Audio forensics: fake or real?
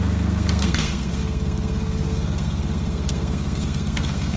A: fake